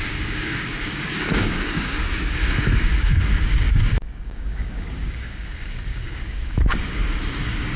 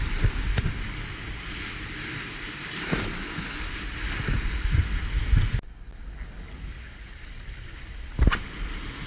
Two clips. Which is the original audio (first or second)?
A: second